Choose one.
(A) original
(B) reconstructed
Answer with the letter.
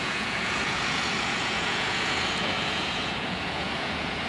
B